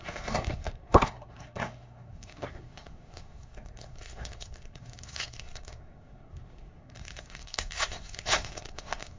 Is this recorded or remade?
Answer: remade